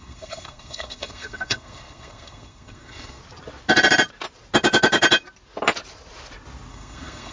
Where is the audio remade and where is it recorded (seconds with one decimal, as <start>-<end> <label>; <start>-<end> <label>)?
0.0-3.2 remade; 3.2-6.7 recorded; 6.7-7.3 remade